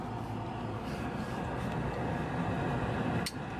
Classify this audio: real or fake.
real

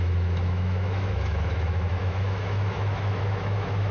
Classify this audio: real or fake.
fake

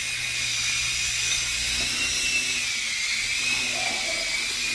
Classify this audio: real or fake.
real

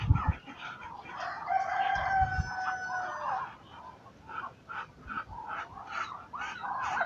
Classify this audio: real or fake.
real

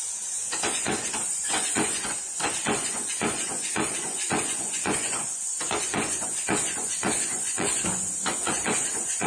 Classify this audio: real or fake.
fake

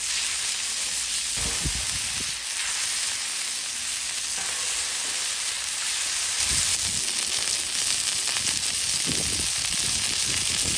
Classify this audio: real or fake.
real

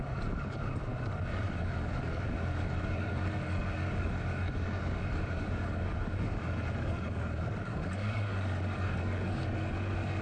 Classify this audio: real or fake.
fake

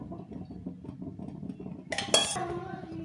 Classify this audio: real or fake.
real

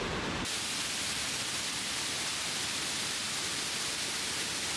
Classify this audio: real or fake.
real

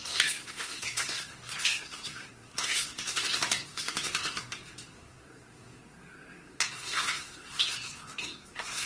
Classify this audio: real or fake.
fake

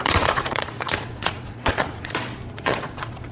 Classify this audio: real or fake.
fake